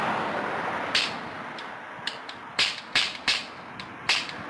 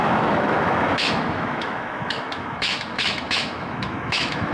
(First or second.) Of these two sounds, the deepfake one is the second